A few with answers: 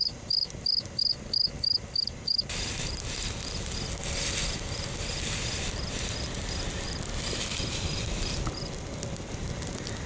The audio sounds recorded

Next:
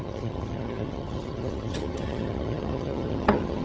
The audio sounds remade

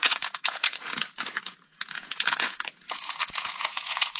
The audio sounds remade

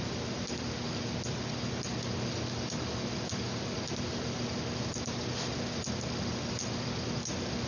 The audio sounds recorded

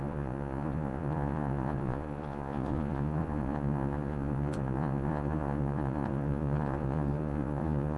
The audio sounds remade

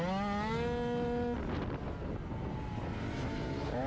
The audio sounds recorded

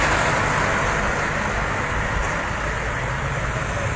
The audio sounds recorded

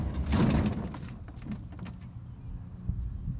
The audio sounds recorded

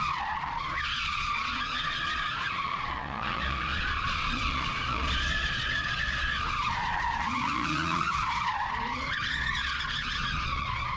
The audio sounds remade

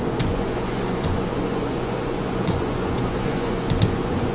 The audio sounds remade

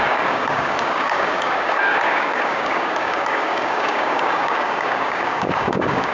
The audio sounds remade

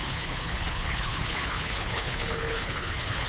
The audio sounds remade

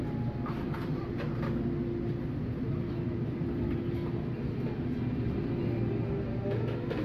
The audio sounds recorded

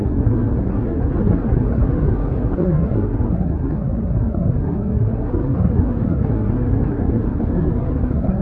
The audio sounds remade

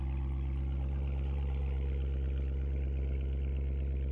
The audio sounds recorded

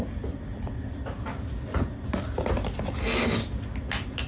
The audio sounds recorded